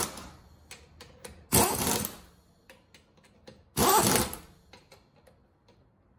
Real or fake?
real